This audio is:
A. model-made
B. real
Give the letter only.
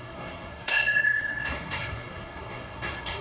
A